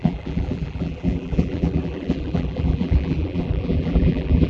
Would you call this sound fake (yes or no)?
yes